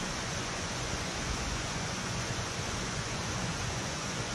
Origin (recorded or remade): remade